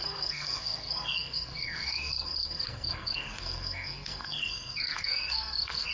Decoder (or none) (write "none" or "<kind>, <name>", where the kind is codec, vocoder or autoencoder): codec, SNAC